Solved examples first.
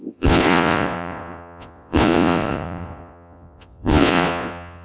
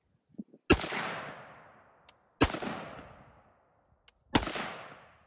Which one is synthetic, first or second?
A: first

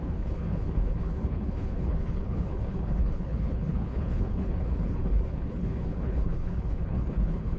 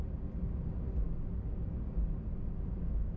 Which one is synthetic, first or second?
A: first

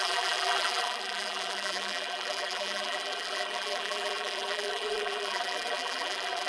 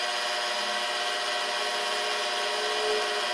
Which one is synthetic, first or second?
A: first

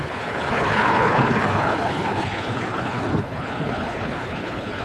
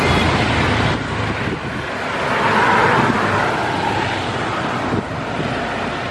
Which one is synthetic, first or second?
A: first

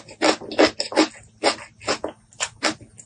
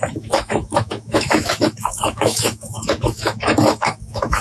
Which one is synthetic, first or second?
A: second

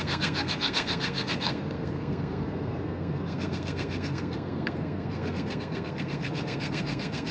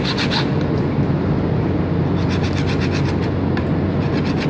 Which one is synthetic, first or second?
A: first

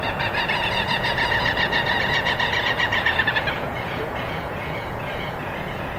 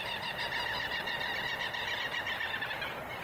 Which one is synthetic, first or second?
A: first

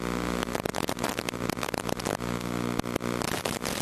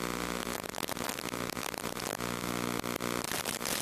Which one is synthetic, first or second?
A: second